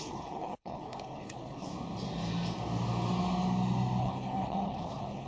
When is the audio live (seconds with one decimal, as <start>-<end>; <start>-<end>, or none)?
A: 1.7-4.0